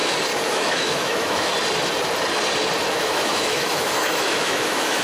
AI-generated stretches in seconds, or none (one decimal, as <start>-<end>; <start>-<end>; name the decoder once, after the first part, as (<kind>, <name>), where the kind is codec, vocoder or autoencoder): 0.5-1.5 (autoencoder, DAC-VAE); 2.9-5.0